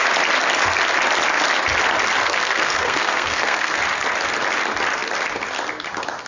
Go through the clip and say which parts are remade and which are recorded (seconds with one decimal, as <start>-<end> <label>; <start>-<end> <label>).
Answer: 0.0-2.2 recorded; 2.2-3.8 remade; 3.8-6.3 recorded